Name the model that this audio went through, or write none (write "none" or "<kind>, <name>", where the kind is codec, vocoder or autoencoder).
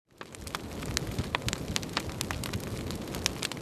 none